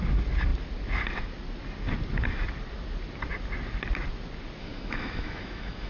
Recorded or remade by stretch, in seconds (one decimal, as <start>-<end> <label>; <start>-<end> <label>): 0.0-4.6 recorded; 4.6-5.9 remade